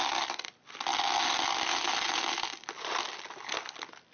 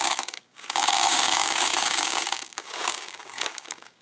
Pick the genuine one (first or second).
first